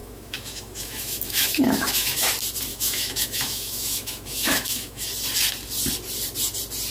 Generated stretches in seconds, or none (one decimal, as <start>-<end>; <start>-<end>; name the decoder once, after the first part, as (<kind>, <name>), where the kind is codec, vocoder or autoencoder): 0.0-2.3 (autoencoder, DAC-VAE); 2.7-5.1